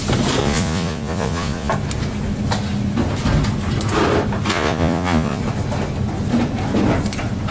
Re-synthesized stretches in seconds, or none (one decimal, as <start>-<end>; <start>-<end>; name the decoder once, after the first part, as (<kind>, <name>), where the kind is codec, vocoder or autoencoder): 0.4-1.7 (vocoder, Vocos); 4.5-5.4

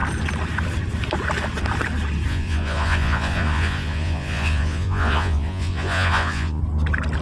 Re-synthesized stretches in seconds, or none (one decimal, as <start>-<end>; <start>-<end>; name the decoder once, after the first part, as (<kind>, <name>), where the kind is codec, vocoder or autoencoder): 2.3-6.6 (vocoder, Vocos)

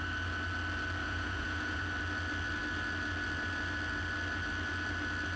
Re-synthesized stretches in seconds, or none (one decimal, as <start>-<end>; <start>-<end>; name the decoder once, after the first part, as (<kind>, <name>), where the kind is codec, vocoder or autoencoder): 1.0-1.8 (vocoder, Vocos)

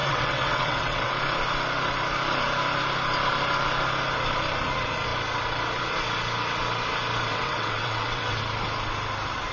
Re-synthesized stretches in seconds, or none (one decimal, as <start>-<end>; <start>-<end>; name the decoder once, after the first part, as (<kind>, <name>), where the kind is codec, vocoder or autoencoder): 0.0-1.2 (vocoder, WaveNeXt); 7.3-8.4

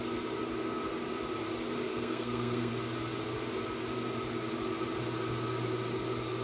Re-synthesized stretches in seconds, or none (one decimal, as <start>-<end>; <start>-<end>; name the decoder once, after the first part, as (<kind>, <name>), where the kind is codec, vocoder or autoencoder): 1.9-2.7 (codec, SNAC)

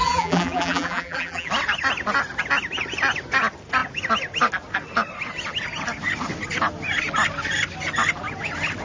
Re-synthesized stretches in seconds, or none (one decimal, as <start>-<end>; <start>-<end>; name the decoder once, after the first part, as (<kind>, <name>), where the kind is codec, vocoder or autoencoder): 0.0-1.5 (vocoder, BigVGAN v2)

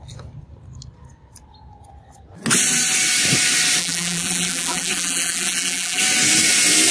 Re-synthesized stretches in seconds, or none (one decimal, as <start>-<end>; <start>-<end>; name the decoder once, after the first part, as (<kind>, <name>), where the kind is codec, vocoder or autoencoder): 3.8-6.0 (vocoder, BigVGAN v2)

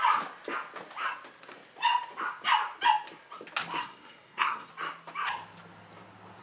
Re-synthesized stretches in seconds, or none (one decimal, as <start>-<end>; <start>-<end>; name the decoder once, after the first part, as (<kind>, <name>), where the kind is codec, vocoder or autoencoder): 3.8-4.7 (codec, SNAC)